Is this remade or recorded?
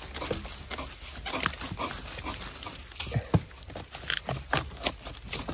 recorded